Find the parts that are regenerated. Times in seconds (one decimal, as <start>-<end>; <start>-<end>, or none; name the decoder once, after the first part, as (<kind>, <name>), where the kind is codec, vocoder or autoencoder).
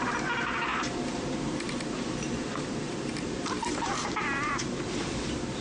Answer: 0.7-4.1 (vocoder, BigVGAN v2)